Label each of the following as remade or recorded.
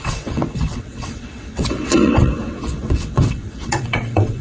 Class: remade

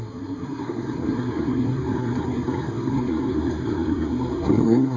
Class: remade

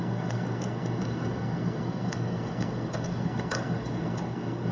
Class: remade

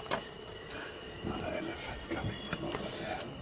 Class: recorded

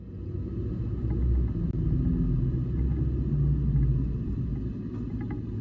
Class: recorded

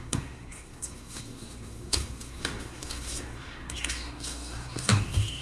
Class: remade